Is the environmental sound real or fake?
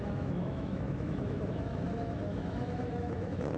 fake